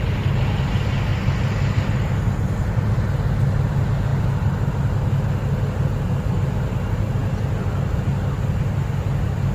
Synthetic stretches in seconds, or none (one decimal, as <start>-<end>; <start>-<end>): none